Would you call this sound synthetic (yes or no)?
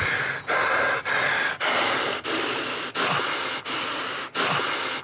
no